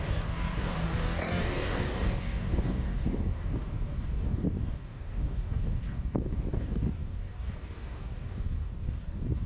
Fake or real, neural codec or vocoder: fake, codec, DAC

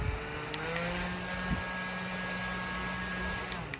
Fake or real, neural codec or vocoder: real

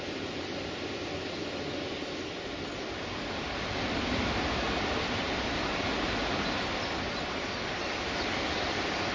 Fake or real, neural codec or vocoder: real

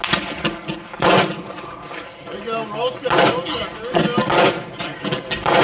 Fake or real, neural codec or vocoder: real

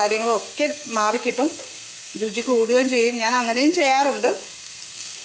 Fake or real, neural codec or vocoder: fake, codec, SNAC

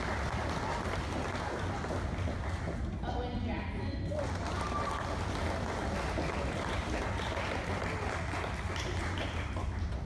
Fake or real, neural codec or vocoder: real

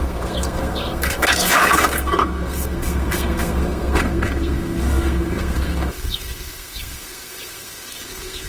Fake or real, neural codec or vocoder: fake, codec, SNAC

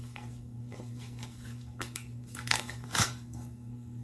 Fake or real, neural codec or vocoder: fake, codec, SNAC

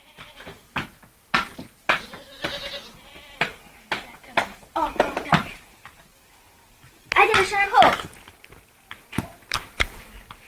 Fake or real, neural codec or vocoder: real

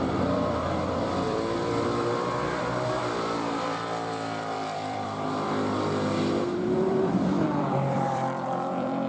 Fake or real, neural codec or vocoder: fake, vocoder, BigVGAN v2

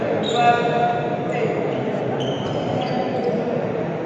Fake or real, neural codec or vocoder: real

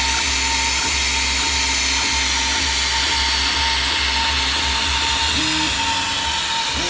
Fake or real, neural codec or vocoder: real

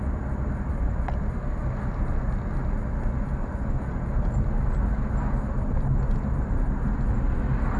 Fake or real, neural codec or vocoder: real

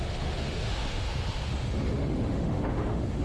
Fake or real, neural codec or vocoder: fake, autoencoder, DAC-VAE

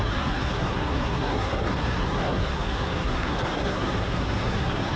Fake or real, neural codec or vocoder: fake, codec, SNAC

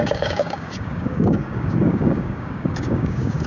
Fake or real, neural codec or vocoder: fake, codec, DAC